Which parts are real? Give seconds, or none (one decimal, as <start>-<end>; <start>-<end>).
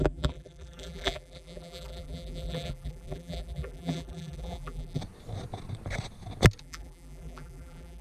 5.0-6.6